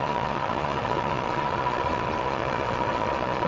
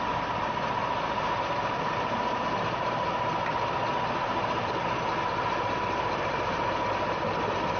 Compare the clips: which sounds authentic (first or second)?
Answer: second